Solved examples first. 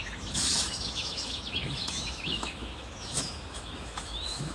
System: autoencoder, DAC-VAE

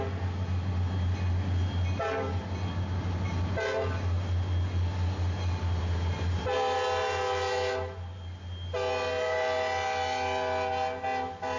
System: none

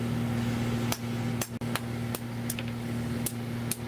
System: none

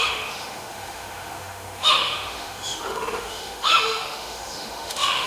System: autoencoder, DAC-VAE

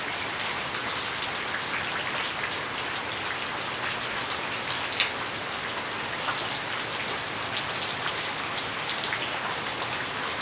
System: none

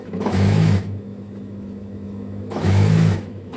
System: autoencoder, DAC-VAE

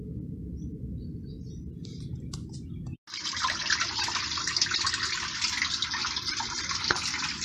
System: none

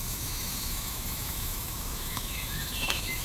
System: autoencoder, DAC-VAE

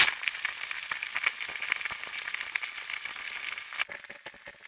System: none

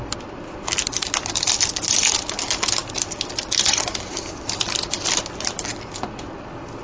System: none